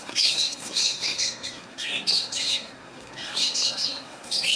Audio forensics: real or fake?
fake